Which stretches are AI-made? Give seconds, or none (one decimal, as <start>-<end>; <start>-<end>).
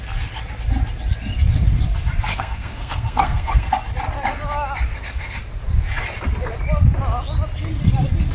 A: 2.3-3.7; 4.9-5.4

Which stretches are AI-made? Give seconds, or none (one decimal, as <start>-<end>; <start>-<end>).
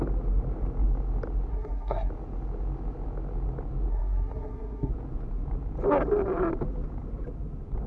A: 1.5-2.1; 3.9-4.9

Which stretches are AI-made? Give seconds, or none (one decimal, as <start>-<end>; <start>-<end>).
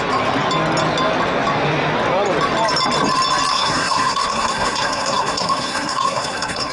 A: 3.5-6.7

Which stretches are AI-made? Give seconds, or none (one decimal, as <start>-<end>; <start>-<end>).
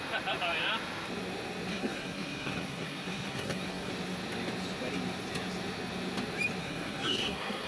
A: 1.7-3.9; 6.6-7.7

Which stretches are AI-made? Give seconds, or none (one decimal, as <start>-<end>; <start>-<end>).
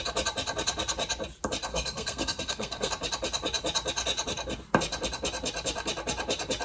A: 1.7-2.9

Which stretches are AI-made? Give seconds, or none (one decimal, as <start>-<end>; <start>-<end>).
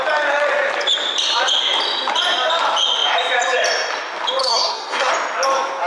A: 4.4-5.1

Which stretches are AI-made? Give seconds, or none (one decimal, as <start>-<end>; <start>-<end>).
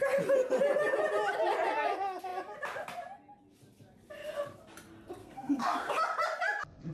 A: 5.2-5.9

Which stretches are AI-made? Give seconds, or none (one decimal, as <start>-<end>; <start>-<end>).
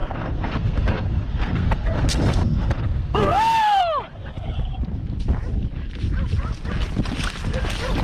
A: 0.0-3.8